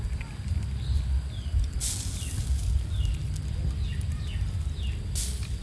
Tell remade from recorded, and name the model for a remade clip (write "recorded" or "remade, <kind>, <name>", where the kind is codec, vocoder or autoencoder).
recorded